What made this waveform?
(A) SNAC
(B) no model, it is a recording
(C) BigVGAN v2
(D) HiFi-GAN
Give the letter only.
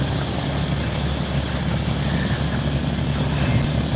B